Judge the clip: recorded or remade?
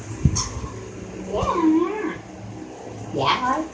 recorded